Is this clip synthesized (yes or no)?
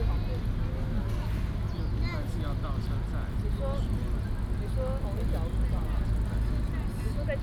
no